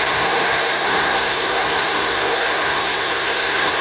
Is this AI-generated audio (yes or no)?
yes